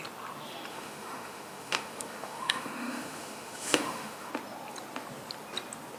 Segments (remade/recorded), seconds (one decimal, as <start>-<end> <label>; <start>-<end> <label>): 0.0-0.7 recorded; 0.7-4.3 remade; 4.3-6.0 recorded